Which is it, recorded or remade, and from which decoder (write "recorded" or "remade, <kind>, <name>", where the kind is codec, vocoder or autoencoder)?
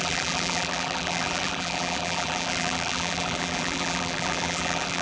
remade, vocoder, BigVGAN v2